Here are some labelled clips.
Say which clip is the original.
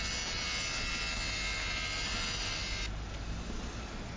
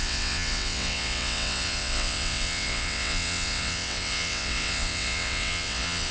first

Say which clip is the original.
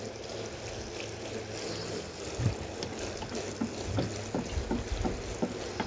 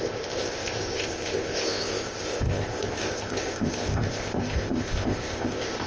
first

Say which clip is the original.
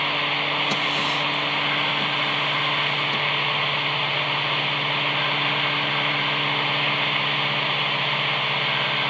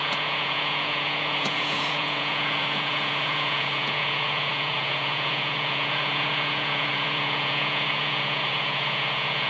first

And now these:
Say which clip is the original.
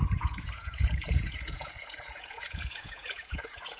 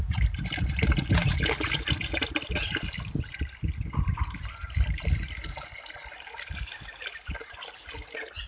second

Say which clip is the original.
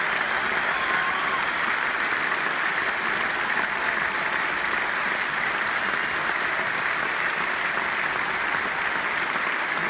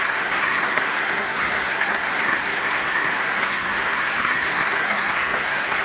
first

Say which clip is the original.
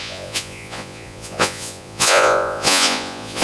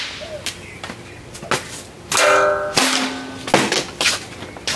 second